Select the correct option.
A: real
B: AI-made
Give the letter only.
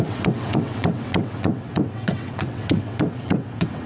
B